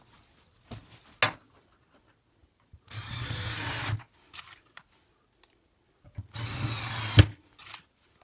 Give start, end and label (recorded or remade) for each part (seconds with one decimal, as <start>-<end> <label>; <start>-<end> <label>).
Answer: 0.0-2.4 recorded; 2.4-3.7 remade; 3.7-8.2 recorded